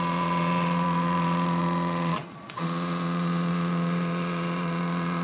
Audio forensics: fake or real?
fake